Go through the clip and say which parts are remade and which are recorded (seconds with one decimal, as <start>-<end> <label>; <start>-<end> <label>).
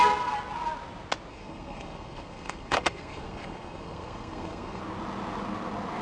0.0-1.3 recorded; 1.3-4.8 remade; 4.8-6.0 recorded